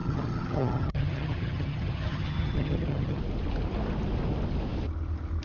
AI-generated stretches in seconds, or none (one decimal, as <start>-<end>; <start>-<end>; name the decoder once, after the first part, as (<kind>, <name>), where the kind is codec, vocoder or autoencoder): 0.0-3.2 (vocoder, HiFi-GAN)